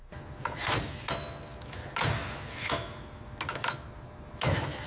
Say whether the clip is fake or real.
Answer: real